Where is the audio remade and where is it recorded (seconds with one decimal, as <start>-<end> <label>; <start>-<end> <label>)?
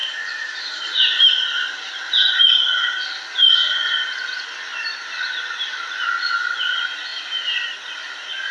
0.0-2.1 remade; 2.1-8.5 recorded